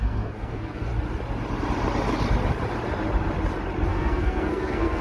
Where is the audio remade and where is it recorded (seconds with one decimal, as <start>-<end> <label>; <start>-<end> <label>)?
0.0-0.9 remade; 0.9-3.9 recorded; 3.9-5.0 remade